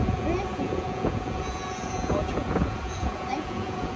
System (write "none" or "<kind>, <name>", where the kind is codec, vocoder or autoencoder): vocoder, Vocos